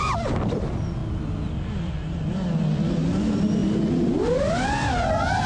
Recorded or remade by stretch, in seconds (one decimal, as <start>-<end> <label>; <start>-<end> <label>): 0.0-5.5 recorded